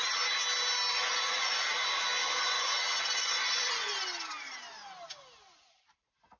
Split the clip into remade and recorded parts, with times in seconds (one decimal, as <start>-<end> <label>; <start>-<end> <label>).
0.0-0.9 recorded; 0.9-1.6 remade; 1.6-2.2 recorded; 2.2-2.8 remade; 2.8-3.2 recorded; 3.2-3.9 remade; 3.9-6.4 recorded